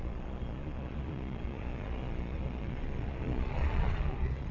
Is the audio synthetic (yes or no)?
yes